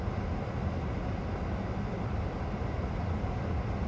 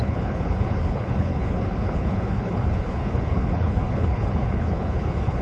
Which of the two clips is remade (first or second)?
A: second